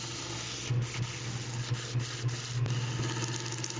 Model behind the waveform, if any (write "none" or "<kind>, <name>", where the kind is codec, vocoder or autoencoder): none